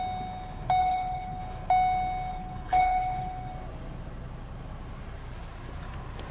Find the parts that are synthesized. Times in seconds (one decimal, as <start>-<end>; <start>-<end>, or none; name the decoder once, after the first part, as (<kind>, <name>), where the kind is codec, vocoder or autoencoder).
0.8-1.4 (codec, HILCodec); 2.3-3.5